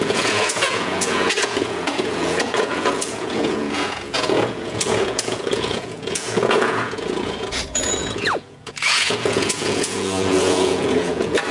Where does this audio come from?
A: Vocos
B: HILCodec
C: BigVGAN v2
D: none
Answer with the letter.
A